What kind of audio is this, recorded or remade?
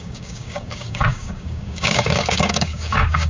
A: remade